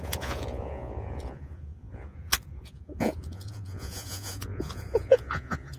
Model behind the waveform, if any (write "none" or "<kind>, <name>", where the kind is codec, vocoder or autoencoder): vocoder, Vocos